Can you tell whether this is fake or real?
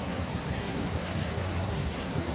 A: fake